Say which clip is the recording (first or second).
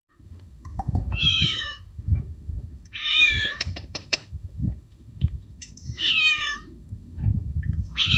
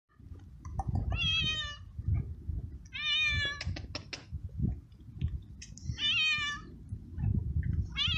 second